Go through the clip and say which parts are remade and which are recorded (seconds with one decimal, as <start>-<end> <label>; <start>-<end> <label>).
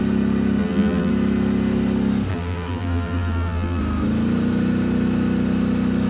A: 0.0-0.6 recorded; 0.6-1.1 remade; 1.1-2.3 recorded; 2.3-3.8 remade; 3.8-6.1 recorded